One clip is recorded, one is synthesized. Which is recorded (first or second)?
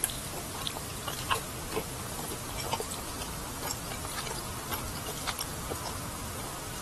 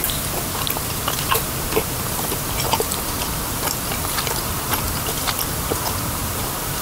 first